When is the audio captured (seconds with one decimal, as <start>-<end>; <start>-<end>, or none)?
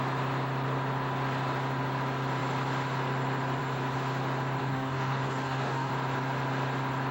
0.0-4.6; 5.9-7.1